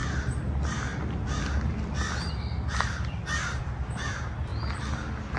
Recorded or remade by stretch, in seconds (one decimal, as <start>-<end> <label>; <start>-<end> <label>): 0.0-5.4 recorded